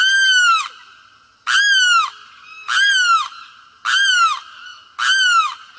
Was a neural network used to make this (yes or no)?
no